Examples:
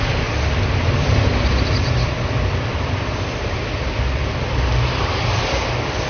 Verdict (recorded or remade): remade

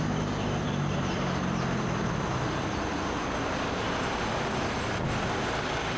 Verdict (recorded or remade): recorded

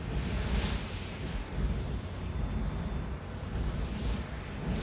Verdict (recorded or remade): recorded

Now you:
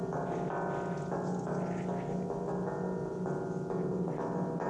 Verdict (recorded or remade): recorded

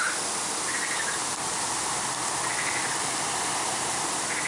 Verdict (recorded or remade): recorded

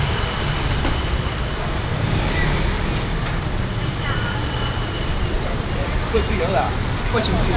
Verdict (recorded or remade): remade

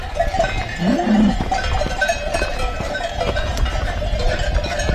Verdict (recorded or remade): remade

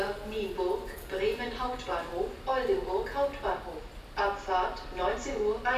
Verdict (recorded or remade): recorded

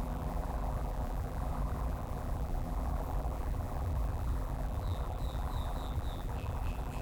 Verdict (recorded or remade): remade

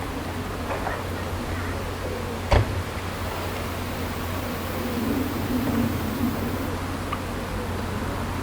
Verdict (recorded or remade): recorded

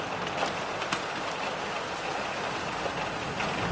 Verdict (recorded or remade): recorded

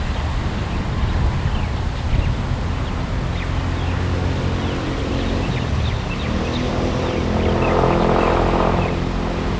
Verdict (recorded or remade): recorded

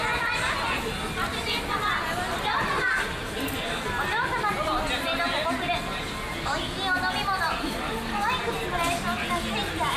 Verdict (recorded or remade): recorded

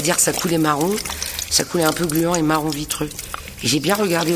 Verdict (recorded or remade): recorded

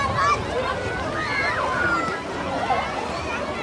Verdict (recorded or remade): recorded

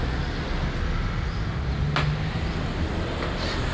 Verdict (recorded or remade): recorded